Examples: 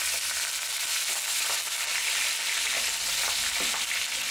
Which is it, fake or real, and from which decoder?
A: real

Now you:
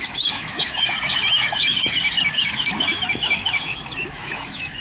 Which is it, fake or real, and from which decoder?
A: fake, autoencoder, DAC-VAE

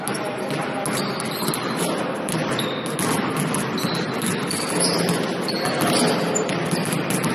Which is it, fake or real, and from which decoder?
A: real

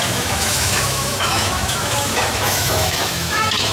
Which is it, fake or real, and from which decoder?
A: fake, autoencoder, DAC-VAE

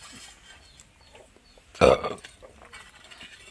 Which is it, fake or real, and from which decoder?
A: real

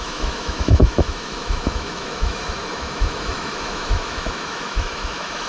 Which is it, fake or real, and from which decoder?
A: fake, autoencoder, DAC-VAE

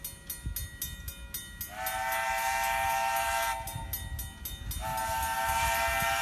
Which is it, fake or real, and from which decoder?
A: real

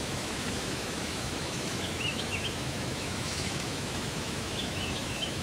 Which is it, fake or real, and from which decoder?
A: fake, autoencoder, DAC-VAE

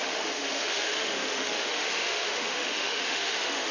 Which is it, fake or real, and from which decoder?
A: fake, autoencoder, DAC-VAE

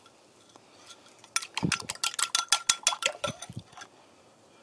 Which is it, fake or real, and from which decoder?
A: real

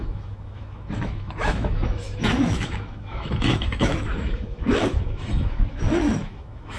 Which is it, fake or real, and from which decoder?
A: fake, autoencoder, DAC-VAE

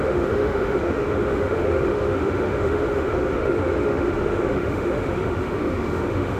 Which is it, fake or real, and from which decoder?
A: fake, autoencoder, DAC-VAE